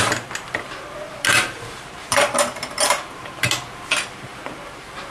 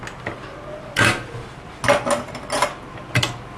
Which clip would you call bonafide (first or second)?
second